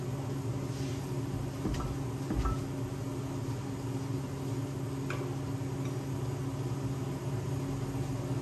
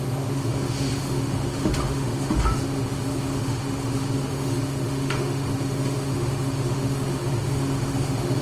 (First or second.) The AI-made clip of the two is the second